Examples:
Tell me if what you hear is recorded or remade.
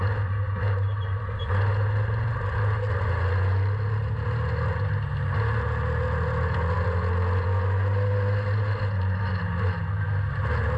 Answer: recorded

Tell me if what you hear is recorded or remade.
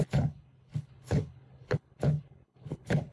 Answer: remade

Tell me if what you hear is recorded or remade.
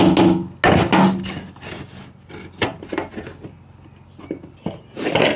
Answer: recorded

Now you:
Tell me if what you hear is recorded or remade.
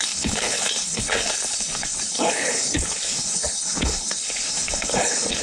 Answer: remade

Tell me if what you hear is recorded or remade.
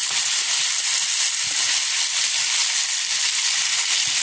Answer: recorded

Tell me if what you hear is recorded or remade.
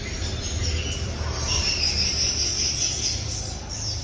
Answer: recorded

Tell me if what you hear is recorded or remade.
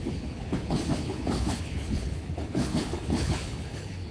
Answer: remade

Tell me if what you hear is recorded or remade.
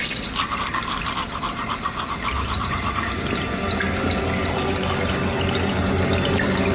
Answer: recorded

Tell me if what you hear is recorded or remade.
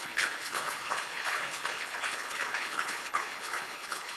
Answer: remade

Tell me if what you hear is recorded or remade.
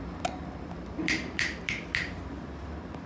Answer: recorded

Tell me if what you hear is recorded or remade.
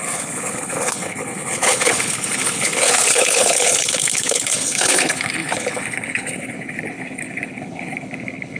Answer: remade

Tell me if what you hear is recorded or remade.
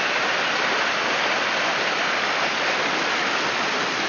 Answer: recorded